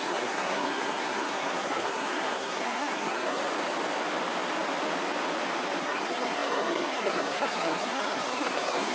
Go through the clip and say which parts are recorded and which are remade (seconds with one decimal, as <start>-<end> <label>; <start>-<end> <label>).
0.0-3.4 remade; 3.4-5.8 recorded; 5.8-8.9 remade